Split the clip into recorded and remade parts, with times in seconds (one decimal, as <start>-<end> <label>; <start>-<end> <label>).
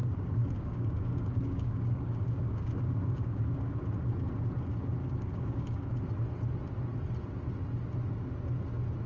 0.0-3.6 remade; 3.6-5.0 recorded; 5.0-5.9 remade; 5.9-9.1 recorded